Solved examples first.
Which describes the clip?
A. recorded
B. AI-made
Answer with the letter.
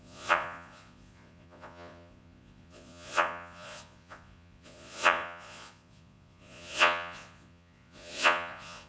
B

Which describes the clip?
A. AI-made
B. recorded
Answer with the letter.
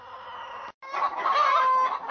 B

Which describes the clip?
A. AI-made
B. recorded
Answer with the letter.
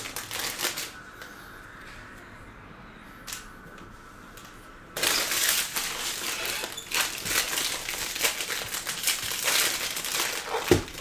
B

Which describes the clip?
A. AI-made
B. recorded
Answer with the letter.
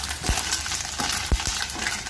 B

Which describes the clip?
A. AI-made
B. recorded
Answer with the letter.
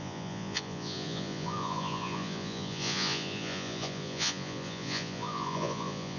A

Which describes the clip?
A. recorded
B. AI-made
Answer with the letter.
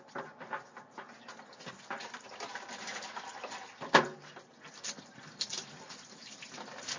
A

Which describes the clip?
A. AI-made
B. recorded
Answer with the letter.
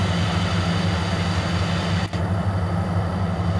B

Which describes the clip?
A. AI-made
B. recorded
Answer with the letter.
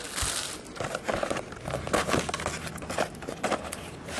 B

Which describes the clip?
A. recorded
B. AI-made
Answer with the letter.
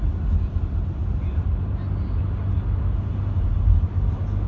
A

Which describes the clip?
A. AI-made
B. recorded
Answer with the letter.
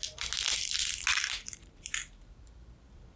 B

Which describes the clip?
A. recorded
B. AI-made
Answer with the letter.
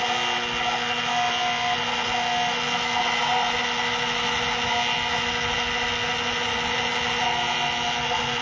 A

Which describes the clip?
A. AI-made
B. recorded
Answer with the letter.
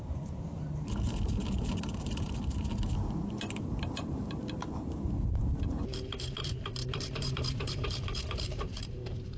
A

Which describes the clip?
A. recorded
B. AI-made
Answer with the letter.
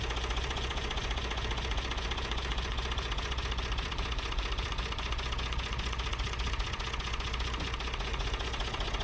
B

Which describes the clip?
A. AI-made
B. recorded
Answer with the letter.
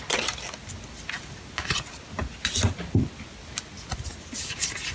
B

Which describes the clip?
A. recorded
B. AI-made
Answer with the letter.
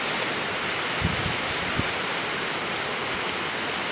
A